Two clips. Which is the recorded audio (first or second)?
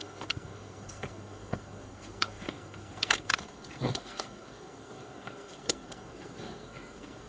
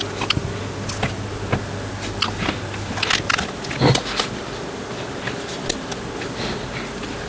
second